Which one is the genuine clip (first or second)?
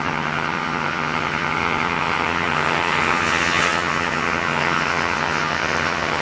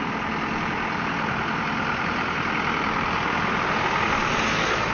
second